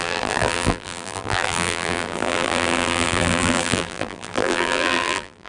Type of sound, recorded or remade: remade